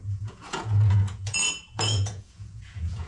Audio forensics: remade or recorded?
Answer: remade